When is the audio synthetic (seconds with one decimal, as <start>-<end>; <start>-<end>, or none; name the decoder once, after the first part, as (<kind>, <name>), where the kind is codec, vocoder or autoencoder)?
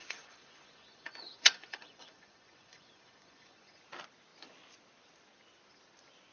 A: 0.0-3.8 (vocoder, Vocos)